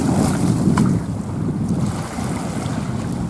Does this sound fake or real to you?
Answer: real